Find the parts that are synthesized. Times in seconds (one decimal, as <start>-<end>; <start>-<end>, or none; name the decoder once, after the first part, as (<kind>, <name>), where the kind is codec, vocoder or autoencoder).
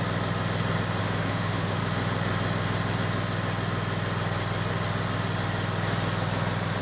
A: 1.0-1.8 (autoencoder, DAC-VAE)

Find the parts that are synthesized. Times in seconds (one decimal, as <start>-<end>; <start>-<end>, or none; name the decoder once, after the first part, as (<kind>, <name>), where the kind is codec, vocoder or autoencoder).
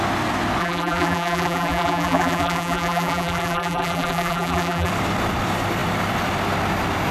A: 0.6-4.9 (vocoder, BigVGAN v2)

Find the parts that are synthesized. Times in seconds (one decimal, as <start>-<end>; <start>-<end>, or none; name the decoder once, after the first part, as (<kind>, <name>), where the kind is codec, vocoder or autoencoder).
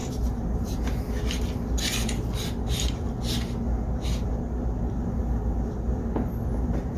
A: 0.0-1.0 (vocoder, BigVGAN v2)